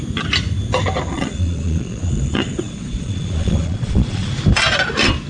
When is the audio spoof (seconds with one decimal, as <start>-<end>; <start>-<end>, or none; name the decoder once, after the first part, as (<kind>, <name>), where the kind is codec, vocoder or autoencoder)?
1.1-4.3 (vocoder, Vocos)